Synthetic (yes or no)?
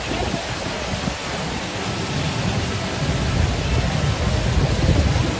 no